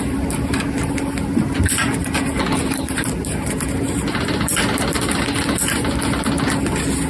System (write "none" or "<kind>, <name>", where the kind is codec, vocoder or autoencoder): none